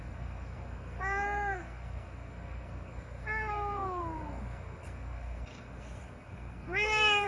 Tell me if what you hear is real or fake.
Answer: fake